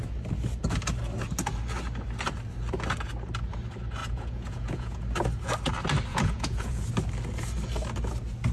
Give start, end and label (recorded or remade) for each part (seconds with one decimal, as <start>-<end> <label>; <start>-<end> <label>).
0.0-4.0 recorded; 4.0-5.0 remade; 5.0-6.1 recorded; 6.1-6.8 remade; 6.8-8.5 recorded